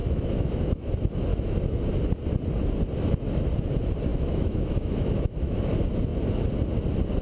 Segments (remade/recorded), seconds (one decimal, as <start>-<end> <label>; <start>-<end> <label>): 0.0-0.9 remade; 0.9-1.3 recorded; 1.3-1.9 remade; 1.9-4.1 recorded; 4.1-5.6 remade; 5.6-7.2 recorded